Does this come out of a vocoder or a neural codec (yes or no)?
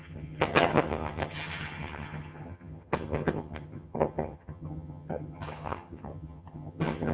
yes